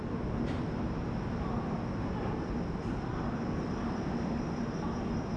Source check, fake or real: fake